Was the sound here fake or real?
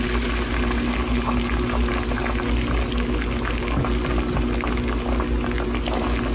real